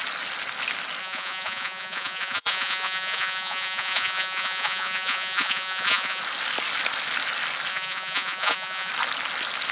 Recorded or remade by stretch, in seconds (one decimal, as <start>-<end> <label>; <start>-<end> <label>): 0.0-1.0 recorded; 1.0-6.2 remade; 6.2-7.7 recorded; 7.7-8.9 remade; 8.9-9.7 recorded